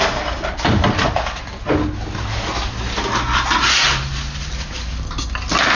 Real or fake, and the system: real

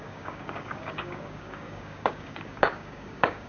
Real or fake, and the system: fake, codec, DAC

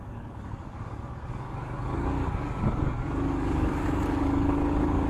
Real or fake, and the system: fake, codec, DAC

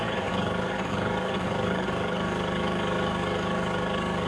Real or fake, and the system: fake, codec, DAC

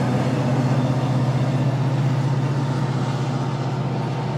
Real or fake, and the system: real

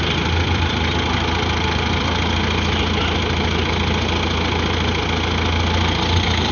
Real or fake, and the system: real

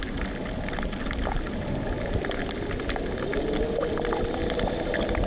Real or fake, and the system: real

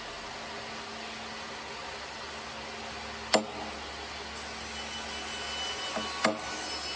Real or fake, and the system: real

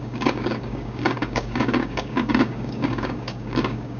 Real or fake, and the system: fake, codec, DAC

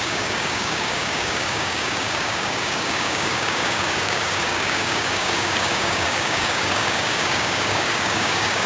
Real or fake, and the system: fake, codec, DAC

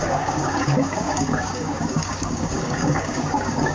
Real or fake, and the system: fake, codec, DAC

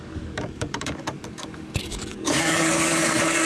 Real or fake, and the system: fake, codec, DAC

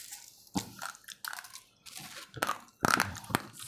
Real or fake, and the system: real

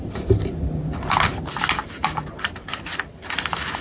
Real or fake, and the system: real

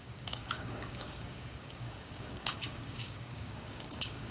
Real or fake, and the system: fake, codec, DAC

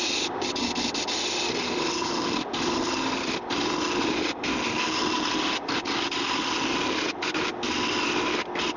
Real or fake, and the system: real